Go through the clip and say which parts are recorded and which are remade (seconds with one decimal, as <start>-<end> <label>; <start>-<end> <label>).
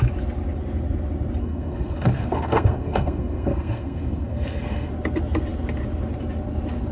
0.0-1.4 recorded; 1.4-4.9 remade; 4.9-6.9 recorded